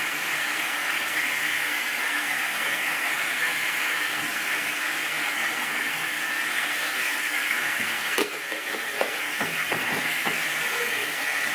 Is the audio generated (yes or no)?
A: yes